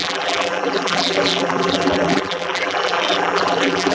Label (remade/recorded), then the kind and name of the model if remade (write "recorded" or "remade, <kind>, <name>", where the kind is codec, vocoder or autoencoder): remade, vocoder, BigVGAN v2